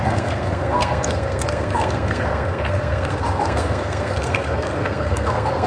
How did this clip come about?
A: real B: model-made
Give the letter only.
B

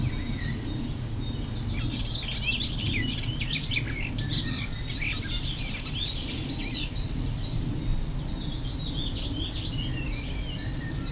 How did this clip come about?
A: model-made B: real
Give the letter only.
B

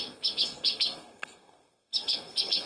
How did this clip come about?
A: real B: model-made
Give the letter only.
B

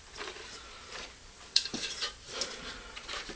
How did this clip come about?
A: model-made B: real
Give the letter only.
A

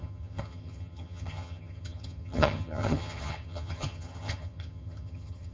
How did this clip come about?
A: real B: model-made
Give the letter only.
B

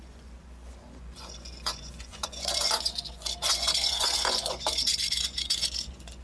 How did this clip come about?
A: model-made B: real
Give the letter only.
A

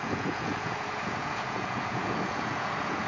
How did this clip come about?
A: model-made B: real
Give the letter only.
A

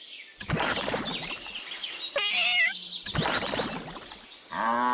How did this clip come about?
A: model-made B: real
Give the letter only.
B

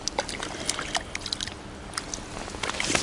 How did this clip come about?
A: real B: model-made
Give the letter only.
A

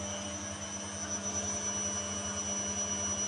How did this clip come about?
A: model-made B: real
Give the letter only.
B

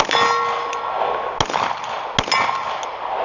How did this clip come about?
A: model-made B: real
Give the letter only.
B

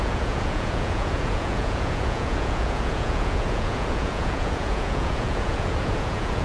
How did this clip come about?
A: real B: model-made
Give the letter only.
B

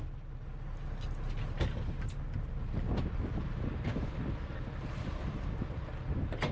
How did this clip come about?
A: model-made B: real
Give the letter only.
B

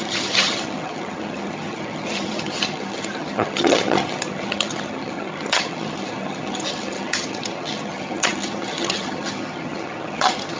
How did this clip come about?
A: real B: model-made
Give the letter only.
B